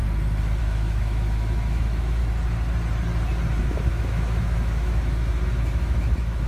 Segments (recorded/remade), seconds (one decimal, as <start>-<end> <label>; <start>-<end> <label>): 0.0-0.6 recorded; 0.6-2.2 remade; 2.2-3.6 recorded; 3.6-6.5 remade